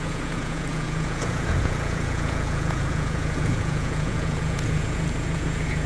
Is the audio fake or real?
fake